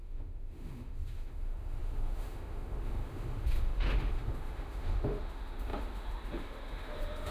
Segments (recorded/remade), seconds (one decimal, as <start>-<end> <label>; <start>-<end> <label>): 0.0-7.3 remade